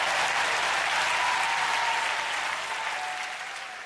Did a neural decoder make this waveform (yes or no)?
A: no